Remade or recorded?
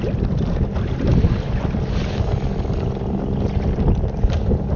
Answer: recorded